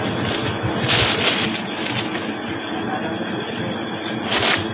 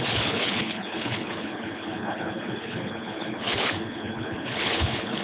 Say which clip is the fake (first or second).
second